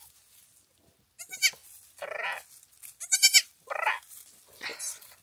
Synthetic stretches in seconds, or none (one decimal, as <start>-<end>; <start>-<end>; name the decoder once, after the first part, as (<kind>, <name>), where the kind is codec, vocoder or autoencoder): none